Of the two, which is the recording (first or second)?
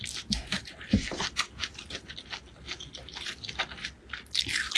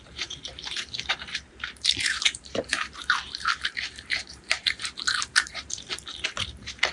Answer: first